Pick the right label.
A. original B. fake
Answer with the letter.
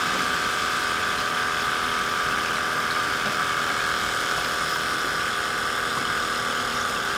A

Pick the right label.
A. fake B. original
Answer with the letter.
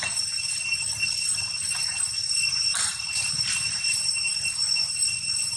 B